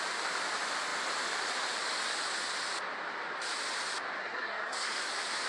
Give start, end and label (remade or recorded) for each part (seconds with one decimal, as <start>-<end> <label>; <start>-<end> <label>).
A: 0.0-4.2 recorded; 4.2-5.0 remade; 5.0-5.5 recorded